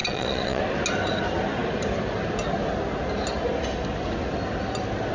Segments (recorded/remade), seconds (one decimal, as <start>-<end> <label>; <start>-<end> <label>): 0.0-0.6 remade; 0.6-5.1 recorded